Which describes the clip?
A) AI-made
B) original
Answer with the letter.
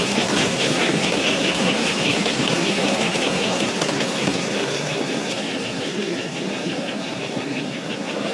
A